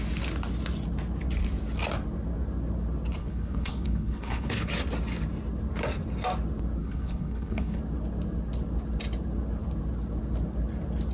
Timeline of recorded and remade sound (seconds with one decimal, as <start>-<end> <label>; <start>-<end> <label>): 0.0-3.2 recorded; 3.2-4.7 remade; 4.7-6.8 recorded; 6.8-7.8 remade; 7.8-11.1 recorded